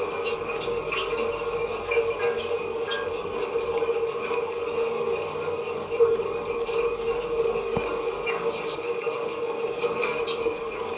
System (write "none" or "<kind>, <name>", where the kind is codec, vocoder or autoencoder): codec, DAC